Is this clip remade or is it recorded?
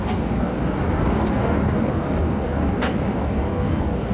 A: remade